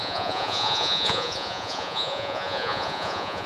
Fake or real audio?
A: fake